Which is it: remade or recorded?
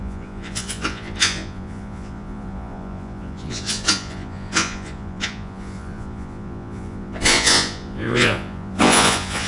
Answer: remade